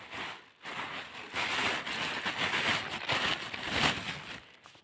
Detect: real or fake real